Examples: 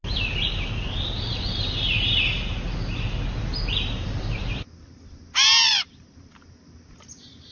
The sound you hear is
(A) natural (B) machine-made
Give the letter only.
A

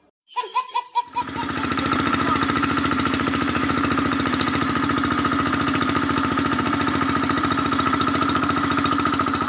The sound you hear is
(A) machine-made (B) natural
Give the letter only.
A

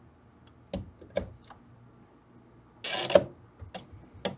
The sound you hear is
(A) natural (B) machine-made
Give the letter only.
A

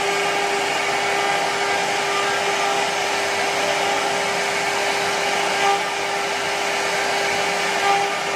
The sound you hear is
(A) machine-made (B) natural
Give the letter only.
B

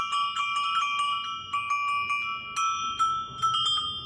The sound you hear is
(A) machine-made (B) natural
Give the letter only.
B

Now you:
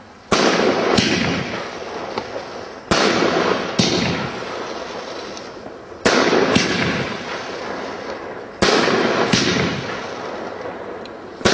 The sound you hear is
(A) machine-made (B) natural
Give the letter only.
B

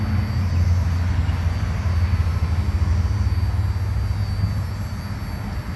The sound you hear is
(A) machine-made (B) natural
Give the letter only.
B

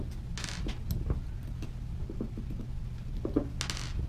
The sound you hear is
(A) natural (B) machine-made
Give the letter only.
A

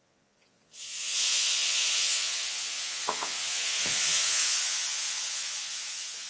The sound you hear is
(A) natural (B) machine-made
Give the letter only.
B